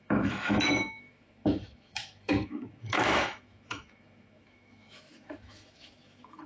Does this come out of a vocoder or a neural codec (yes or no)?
yes